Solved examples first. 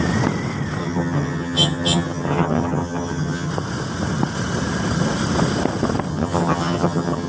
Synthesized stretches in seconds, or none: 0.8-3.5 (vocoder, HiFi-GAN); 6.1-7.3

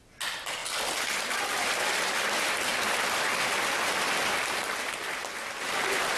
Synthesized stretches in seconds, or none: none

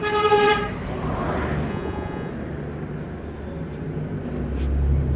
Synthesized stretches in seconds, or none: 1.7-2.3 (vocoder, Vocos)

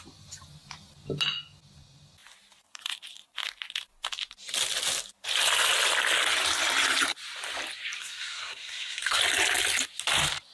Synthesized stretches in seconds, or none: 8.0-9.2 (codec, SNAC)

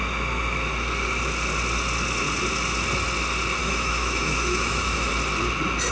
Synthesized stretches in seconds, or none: 3.6-5.1 (autoencoder, DAC-VAE)